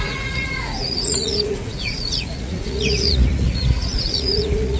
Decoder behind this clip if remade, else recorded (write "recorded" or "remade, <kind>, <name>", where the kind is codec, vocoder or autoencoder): remade, vocoder, Vocos